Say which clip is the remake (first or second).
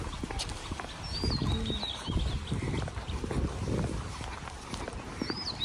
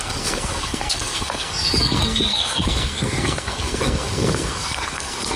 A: second